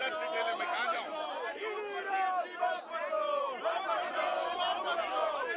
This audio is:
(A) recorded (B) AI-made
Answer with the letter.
A